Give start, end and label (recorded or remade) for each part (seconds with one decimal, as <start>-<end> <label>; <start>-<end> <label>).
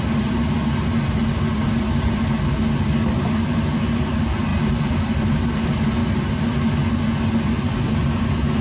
0.0-4.5 recorded; 4.5-5.4 remade; 5.4-6.0 recorded; 6.0-6.7 remade; 6.7-8.6 recorded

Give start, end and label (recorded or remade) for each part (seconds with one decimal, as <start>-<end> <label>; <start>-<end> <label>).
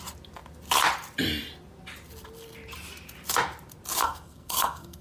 0.0-4.0 recorded; 4.0-5.0 remade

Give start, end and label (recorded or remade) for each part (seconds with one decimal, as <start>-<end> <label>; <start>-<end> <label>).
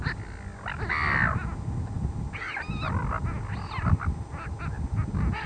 0.0-5.5 recorded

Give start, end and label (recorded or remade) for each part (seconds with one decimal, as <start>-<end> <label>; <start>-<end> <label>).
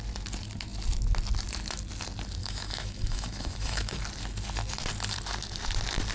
0.0-2.4 recorded; 2.4-4.0 remade; 4.0-6.1 recorded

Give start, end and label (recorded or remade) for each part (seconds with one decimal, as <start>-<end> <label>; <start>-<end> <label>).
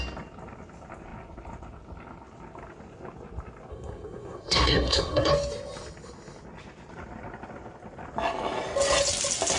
0.0-3.7 recorded; 3.7-5.3 remade; 5.3-9.6 recorded